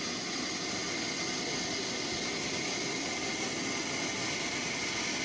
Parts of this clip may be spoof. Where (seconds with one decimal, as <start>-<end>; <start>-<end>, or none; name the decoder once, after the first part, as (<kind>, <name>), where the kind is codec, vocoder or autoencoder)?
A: none

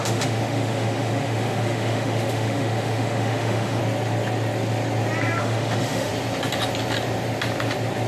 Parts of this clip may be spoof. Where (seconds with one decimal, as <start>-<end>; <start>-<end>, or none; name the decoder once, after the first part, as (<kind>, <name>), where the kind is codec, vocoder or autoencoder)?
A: 0.0-3.8 (autoencoder, DAC-VAE); 5.4-6.1

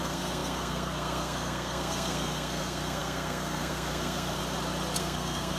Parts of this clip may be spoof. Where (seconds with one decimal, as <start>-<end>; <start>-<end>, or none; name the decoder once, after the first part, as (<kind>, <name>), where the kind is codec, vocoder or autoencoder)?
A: 0.0-4.4 (codec, SNAC); 5.0-5.6

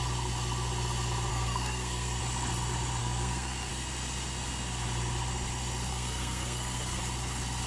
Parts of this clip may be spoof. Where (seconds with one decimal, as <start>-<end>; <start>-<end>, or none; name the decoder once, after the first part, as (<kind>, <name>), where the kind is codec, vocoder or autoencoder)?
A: 1.3-2.2 (codec, SNAC); 3.0-3.7; 5.9-7.0

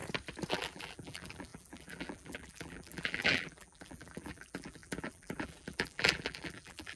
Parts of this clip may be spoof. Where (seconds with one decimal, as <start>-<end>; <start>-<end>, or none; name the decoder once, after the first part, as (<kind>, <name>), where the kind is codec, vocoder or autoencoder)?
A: 0.5-7.0 (vocoder, BigVGAN v2)